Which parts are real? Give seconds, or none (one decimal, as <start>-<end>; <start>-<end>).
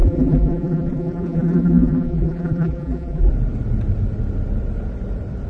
3.3-5.5